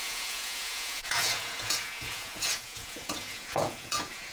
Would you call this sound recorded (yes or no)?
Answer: no